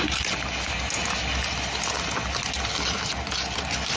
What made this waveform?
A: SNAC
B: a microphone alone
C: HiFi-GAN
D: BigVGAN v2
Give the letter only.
B